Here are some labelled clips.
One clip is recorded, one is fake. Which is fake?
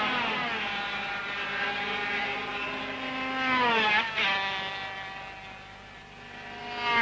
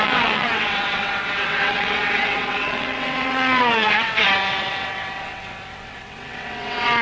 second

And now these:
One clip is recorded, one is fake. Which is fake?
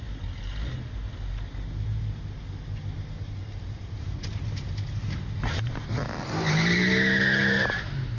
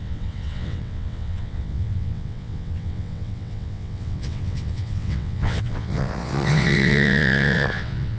second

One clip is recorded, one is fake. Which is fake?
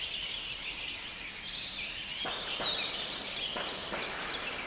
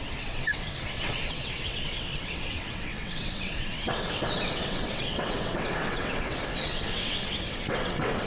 second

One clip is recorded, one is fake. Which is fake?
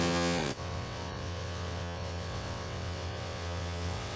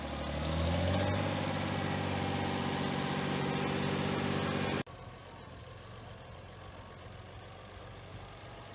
first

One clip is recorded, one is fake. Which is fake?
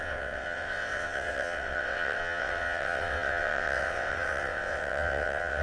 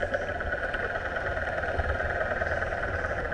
first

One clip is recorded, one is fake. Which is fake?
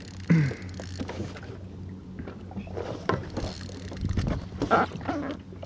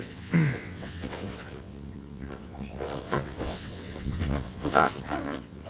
second